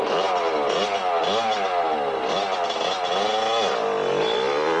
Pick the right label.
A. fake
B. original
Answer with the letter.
B